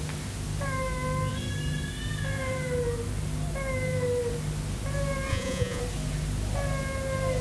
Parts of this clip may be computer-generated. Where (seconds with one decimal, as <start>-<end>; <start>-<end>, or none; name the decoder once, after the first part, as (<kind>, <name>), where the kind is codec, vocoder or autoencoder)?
5.3-5.8 (vocoder, Vocos)